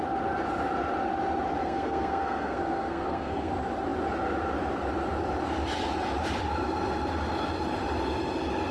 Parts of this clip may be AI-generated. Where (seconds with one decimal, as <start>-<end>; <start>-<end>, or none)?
1.6-3.5